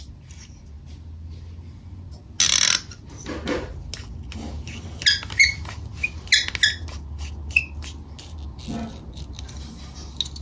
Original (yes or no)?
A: yes